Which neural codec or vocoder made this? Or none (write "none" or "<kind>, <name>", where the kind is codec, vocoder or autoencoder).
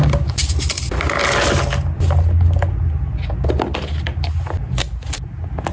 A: none